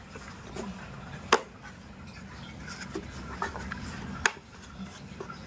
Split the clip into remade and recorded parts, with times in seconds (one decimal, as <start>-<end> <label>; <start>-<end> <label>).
0.0-5.5 recorded